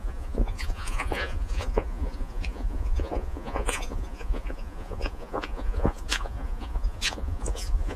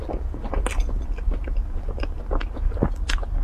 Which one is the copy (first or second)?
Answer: first